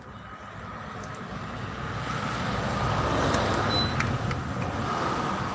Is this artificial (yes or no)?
no